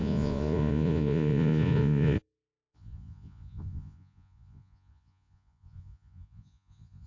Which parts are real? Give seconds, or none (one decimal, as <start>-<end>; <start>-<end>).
none